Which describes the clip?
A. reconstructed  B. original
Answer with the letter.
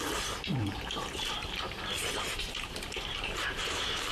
A